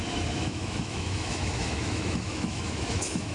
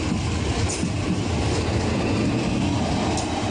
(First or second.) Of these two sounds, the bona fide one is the second